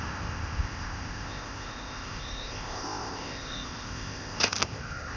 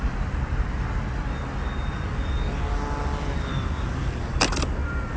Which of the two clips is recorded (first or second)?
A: second